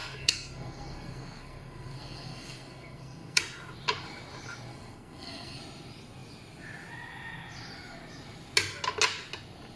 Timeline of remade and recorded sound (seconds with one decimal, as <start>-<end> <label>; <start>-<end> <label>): 0.0-3.4 remade; 3.4-4.7 recorded; 4.7-5.6 remade; 5.6-9.8 recorded